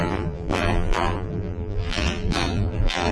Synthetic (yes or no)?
yes